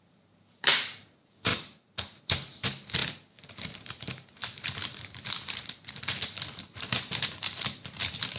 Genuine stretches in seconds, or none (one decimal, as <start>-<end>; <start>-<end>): 1.5-2.2